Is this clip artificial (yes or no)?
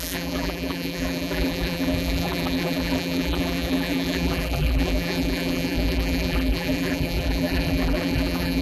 yes